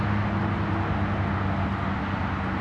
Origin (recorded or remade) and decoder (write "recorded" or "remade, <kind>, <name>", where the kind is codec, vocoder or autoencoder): recorded